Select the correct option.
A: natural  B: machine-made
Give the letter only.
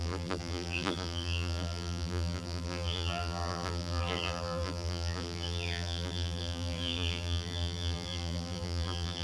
B